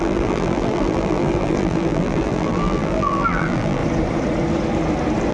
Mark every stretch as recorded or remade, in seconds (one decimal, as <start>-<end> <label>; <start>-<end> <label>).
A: 0.0-3.8 remade; 3.8-5.3 recorded